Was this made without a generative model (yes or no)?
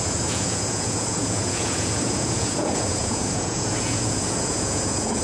no